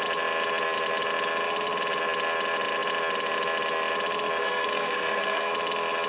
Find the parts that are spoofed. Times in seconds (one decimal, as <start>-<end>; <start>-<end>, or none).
4.4-5.5